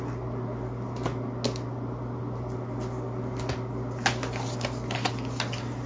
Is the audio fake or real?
real